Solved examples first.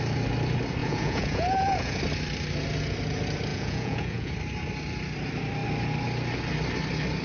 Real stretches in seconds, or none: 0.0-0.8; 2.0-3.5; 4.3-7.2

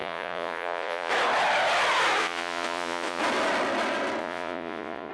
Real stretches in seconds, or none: 1.1-2.2; 3.2-4.2

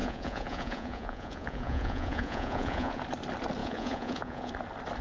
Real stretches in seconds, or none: 3.0-3.6; 4.5-5.0